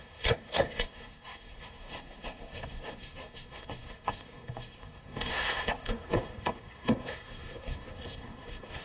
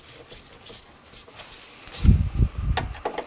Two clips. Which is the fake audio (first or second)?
first